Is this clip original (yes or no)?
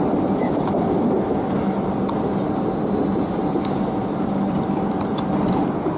yes